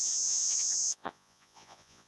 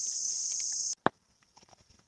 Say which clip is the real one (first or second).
second